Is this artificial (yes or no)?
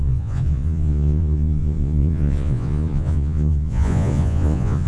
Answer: yes